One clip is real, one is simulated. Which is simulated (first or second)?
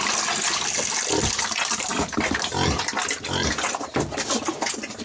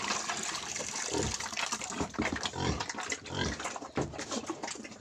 second